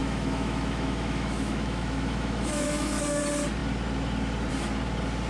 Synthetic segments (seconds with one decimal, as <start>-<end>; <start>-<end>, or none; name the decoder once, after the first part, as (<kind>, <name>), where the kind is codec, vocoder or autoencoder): 0.0-3.2 (autoencoder, DAC-VAE)